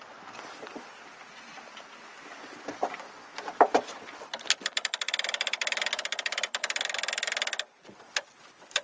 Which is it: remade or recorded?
recorded